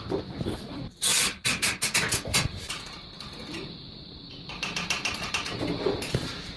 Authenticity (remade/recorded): remade